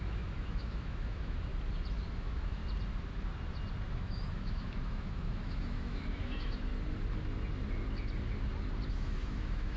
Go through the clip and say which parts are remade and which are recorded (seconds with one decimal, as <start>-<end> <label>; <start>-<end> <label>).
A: 0.0-1.5 remade; 1.5-2.1 recorded; 2.1-2.6 remade; 2.6-3.9 recorded; 3.9-6.7 remade; 6.7-8.9 recorded; 8.9-9.8 remade